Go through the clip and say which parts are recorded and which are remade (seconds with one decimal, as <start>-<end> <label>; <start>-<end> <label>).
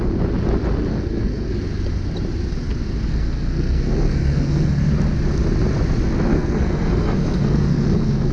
0.0-0.9 recorded; 0.9-1.5 remade; 1.5-3.1 recorded; 3.1-4.8 remade; 4.8-6.3 recorded; 6.3-8.3 remade